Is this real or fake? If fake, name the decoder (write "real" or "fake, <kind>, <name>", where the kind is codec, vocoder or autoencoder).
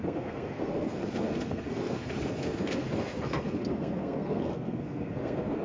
fake, codec, SNAC